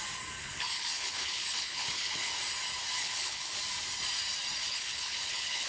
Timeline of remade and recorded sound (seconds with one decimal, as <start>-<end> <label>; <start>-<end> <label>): 0.0-0.4 recorded; 0.4-2.3 remade; 2.3-3.0 recorded; 3.0-3.6 remade; 3.6-4.6 recorded; 4.6-5.7 remade